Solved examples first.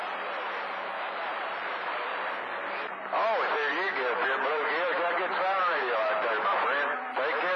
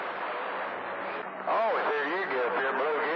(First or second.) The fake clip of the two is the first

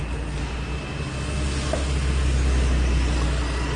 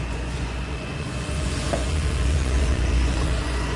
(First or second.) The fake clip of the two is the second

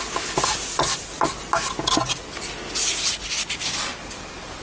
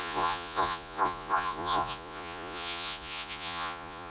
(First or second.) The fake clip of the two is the second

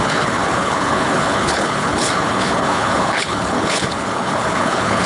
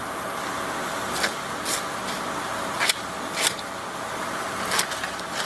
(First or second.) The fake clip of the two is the first